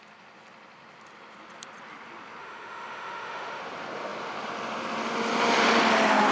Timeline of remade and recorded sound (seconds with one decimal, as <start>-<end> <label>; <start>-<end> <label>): 0.0-2.4 recorded; 2.4-3.6 remade; 3.6-6.3 recorded